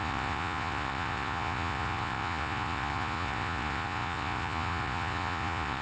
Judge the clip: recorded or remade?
remade